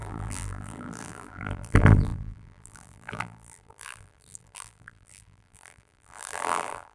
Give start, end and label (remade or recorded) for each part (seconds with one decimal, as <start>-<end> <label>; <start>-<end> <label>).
0.0-6.9 remade